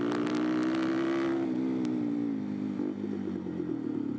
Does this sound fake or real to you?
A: real